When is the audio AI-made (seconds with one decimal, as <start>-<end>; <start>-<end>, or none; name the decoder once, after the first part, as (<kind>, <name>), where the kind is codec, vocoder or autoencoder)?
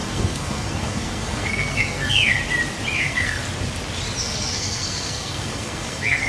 0.0-2.4 (codec, SNAC); 3.0-3.4; 4.2-6.3